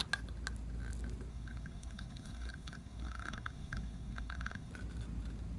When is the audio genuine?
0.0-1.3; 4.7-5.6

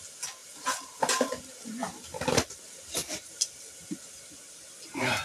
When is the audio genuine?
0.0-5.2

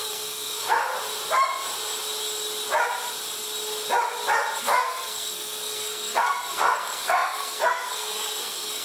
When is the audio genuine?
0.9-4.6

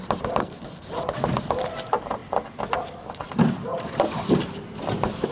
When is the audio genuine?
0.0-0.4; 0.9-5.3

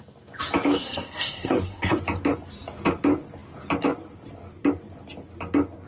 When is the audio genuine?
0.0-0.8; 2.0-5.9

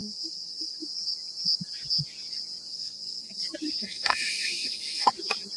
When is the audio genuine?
0.8-2.7; 3.4-3.8; 5.1-5.6